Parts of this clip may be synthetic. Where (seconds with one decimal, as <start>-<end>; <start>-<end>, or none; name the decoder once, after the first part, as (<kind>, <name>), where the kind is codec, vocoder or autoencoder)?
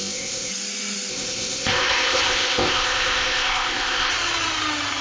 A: 0.0-0.5 (codec, ZipCodec); 1.1-4.1